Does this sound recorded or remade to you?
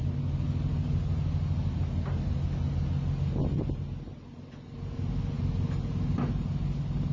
recorded